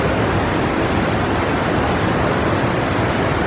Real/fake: real